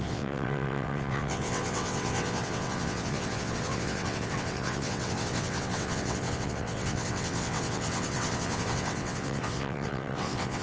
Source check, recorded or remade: remade